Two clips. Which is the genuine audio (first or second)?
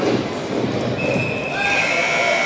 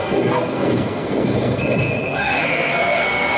first